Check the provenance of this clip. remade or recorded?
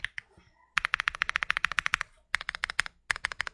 recorded